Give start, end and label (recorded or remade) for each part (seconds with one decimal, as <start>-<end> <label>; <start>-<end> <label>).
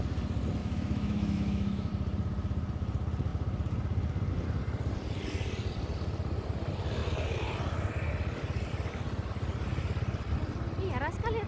0.0-0.6 recorded; 0.6-1.9 remade; 1.9-11.5 recorded